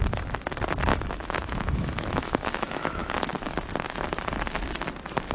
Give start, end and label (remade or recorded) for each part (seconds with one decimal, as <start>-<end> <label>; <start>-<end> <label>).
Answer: 0.0-0.9 recorded; 0.9-3.1 remade; 3.1-5.3 recorded